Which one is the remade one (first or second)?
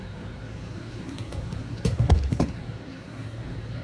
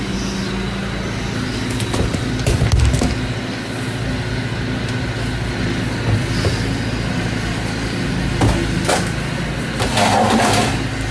first